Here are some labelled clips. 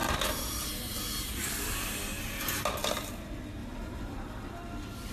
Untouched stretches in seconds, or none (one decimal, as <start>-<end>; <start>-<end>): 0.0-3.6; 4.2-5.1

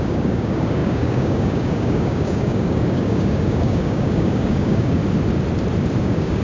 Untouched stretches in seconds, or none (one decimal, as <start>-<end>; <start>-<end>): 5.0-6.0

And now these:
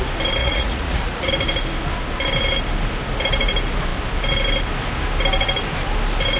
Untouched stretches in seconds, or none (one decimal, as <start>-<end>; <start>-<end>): 0.0-0.4; 1.3-6.4

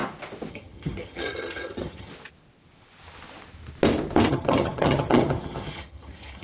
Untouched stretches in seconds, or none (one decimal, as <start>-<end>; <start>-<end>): 0.0-0.5; 2.1-4.3

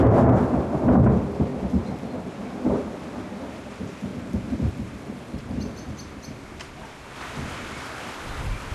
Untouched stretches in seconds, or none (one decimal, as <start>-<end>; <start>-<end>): 0.0-4.1; 5.7-8.7

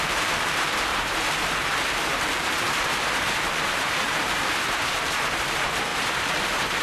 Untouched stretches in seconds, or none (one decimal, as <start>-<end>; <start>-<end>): none

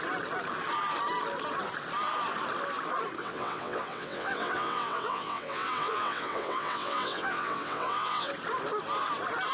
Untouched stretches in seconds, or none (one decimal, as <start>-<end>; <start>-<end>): 0.0-3.2; 8.3-9.5